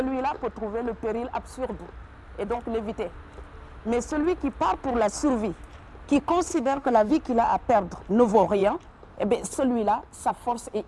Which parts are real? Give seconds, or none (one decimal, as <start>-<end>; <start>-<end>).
0.0-6.5; 7.1-10.9